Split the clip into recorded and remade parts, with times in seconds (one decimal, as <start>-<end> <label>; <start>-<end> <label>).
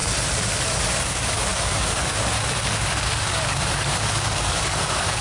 0.0-1.0 recorded; 1.0-5.2 remade